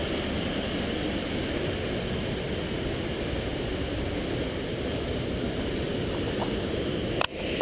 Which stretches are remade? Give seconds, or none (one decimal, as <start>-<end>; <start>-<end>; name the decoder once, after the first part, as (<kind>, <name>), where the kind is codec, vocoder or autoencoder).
none